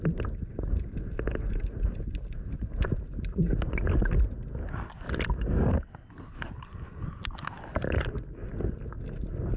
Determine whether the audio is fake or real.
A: real